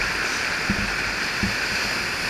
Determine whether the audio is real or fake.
real